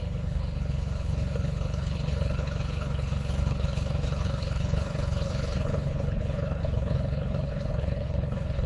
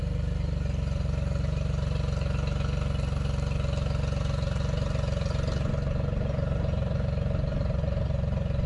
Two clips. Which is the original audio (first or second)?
second